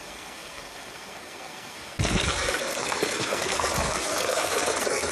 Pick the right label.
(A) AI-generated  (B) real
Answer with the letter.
A